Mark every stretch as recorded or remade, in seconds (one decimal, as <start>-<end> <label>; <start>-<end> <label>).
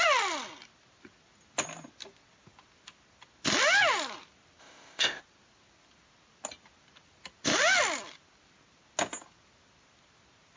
0.0-4.6 recorded; 4.6-5.2 remade; 5.2-10.6 recorded